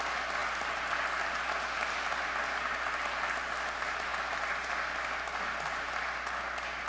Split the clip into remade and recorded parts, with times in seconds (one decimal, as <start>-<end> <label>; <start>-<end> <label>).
0.0-6.9 recorded